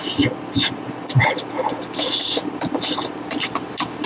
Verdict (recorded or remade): recorded